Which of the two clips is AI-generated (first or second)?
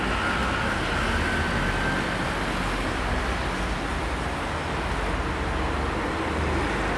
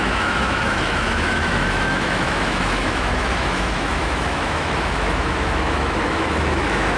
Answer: second